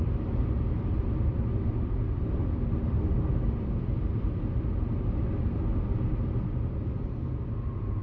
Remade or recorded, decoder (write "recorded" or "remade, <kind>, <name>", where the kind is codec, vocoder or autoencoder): recorded